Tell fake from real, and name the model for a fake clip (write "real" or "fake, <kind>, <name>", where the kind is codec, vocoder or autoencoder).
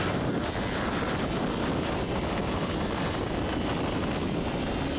real